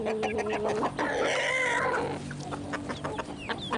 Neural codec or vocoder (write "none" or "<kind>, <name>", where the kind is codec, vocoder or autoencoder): none